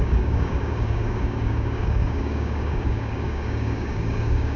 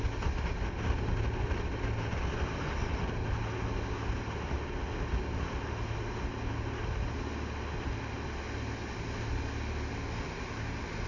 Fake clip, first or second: first